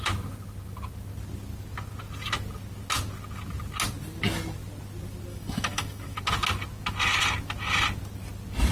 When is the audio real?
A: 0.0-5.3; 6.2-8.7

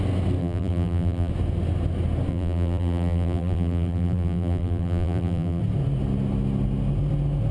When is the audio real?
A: 0.0-0.4; 1.3-2.3; 5.6-7.5

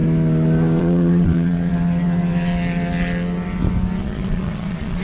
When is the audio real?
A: 0.0-0.8; 1.7-4.0

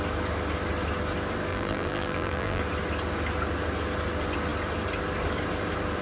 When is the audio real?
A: 0.0-1.5; 2.6-6.0

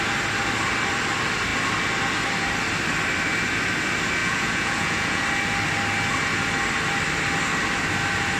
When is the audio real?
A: 0.0-4.2; 5.2-8.4

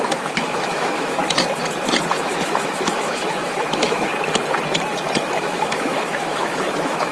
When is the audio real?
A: 1.2-2.2; 4.1-5.4

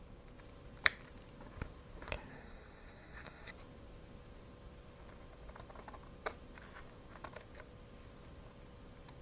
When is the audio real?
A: 0.0-2.3; 3.5-9.2